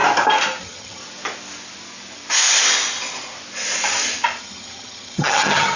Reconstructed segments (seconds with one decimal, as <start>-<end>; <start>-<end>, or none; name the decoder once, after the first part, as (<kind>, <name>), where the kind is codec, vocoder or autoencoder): 0.6-1.0 (vocoder, HiFi-GAN); 4.4-5.8